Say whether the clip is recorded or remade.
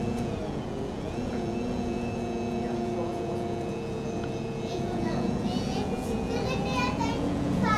remade